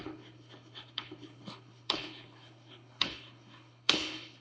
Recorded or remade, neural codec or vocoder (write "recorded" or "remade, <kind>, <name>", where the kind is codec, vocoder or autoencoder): remade, codec, HILCodec